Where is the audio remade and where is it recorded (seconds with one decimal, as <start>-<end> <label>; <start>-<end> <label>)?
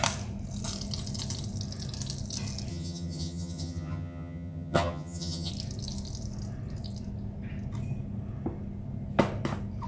0.0-2.7 recorded; 2.7-5.5 remade; 5.5-9.9 recorded